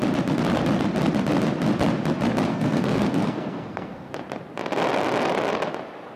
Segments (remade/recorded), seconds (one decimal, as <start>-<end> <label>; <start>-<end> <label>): 0.0-2.5 recorded; 2.5-4.1 remade; 4.1-6.2 recorded